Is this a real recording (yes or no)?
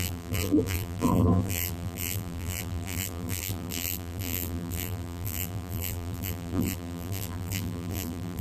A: no